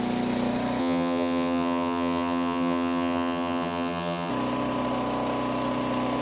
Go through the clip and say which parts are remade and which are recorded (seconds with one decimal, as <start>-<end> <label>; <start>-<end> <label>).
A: 0.0-0.8 recorded; 0.8-4.3 remade; 4.3-6.2 recorded

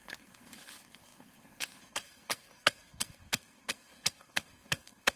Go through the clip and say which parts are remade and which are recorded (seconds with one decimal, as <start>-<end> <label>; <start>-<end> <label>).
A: 0.0-5.2 remade

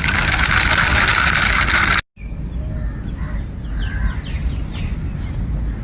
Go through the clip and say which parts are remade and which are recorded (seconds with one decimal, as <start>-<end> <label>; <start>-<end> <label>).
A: 0.0-5.8 recorded

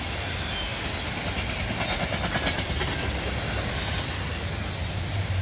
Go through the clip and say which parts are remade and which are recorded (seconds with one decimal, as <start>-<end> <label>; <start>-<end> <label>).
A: 0.0-5.4 recorded

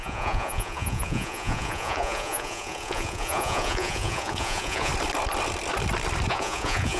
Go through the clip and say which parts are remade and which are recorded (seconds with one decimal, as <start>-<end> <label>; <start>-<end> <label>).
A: 0.0-4.9 remade; 4.9-6.3 recorded; 6.3-7.0 remade

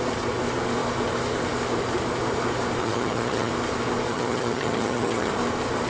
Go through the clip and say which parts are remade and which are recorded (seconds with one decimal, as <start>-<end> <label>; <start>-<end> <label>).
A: 0.0-2.8 recorded; 2.8-3.5 remade; 3.5-4.1 recorded; 4.1-5.3 remade; 5.3-5.9 recorded